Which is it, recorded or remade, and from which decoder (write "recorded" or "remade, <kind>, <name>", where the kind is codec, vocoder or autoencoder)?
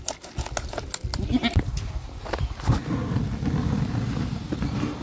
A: recorded